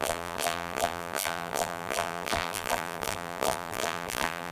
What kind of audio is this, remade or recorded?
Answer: remade